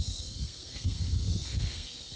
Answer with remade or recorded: remade